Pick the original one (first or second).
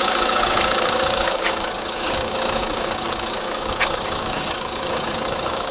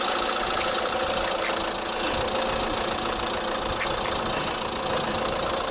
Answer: second